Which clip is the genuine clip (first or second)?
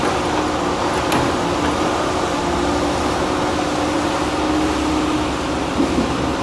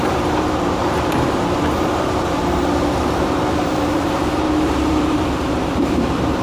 first